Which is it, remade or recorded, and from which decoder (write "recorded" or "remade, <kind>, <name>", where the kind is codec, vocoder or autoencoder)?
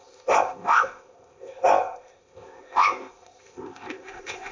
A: remade, codec, ZipCodec